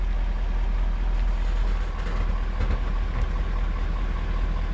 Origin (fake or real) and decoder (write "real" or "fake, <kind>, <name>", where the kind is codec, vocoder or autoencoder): real